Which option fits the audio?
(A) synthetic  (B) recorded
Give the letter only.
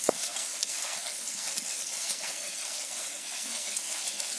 A